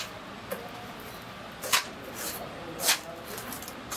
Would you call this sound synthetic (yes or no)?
no